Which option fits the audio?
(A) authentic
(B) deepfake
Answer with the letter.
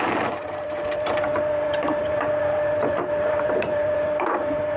B